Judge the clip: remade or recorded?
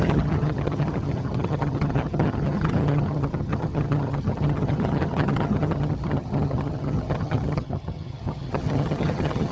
remade